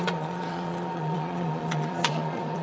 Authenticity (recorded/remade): remade